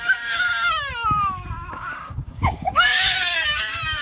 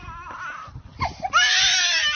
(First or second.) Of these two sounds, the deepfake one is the first